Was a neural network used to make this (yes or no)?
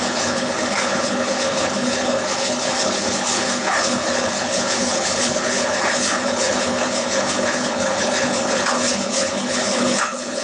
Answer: yes